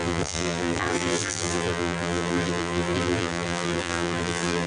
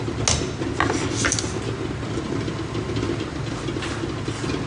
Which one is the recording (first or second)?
second